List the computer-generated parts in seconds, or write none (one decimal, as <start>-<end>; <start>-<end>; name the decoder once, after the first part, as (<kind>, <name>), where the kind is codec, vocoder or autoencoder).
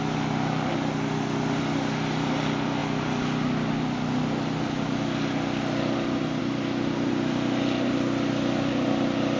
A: none